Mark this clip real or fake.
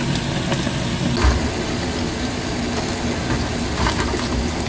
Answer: real